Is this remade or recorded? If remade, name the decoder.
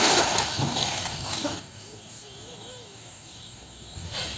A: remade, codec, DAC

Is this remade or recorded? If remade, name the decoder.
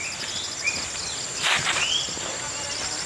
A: recorded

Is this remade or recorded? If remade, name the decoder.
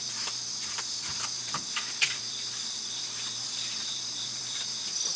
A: remade, vocoder, BigVGAN v2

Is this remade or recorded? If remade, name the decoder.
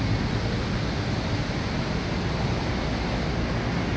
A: recorded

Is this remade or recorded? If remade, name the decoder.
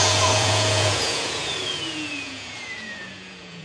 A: remade, vocoder, Vocos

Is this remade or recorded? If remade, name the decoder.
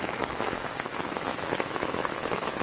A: remade, autoencoder, DAC-VAE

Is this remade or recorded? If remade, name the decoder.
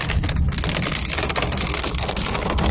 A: recorded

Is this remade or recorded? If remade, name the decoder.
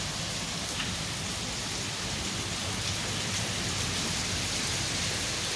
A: recorded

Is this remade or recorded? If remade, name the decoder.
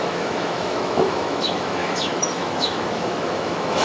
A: remade, autoencoder, DAC-VAE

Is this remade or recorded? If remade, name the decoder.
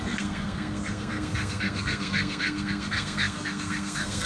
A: remade, codec, SNAC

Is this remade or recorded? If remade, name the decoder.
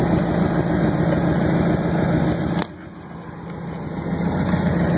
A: recorded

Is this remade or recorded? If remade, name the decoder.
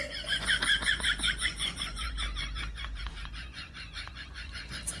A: remade, vocoder, Vocos